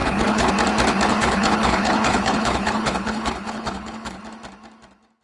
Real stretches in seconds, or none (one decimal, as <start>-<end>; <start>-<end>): 0.5-1.1; 4.2-5.2